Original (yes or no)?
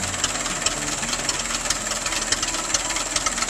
yes